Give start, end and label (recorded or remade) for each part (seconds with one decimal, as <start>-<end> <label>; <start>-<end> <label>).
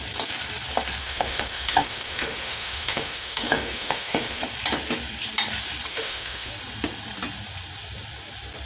0.0-1.0 recorded; 1.0-4.4 remade; 4.4-5.9 recorded; 5.9-6.5 remade; 6.5-8.7 recorded